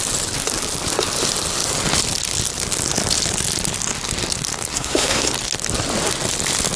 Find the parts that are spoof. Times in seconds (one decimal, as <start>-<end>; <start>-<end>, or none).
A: 4.7-5.3